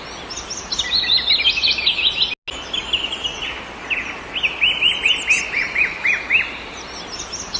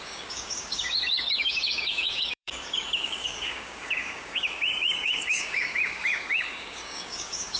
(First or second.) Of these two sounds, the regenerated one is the second